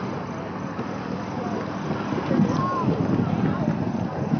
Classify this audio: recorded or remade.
recorded